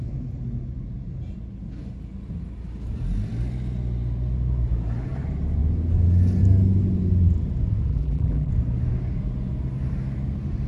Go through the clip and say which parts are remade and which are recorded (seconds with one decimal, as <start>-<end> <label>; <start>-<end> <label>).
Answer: 0.0-7.9 recorded; 7.9-8.5 remade; 8.5-10.7 recorded